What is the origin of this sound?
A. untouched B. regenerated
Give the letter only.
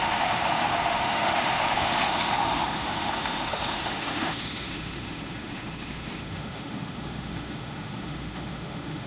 B